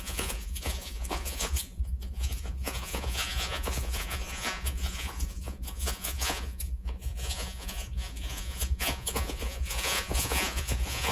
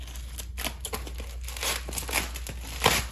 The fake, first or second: first